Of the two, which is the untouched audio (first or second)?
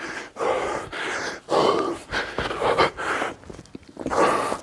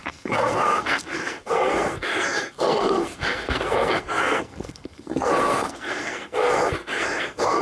first